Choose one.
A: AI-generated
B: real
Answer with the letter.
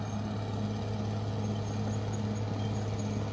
B